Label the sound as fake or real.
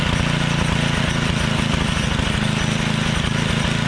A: real